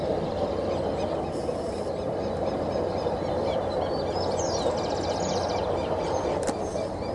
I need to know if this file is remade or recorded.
remade